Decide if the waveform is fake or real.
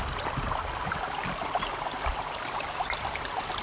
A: real